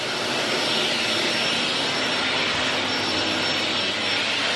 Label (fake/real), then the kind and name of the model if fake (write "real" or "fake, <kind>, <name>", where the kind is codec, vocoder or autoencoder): real